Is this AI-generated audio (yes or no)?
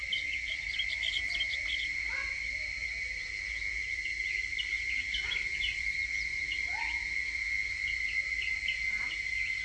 no